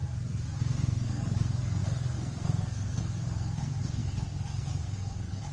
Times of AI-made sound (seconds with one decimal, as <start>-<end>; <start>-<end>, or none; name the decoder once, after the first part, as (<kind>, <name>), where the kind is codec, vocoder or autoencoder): 0.6-5.5 (codec, SNAC)